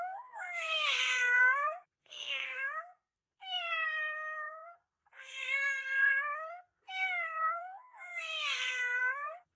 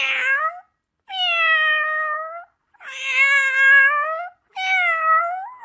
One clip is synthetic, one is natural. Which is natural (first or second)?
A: second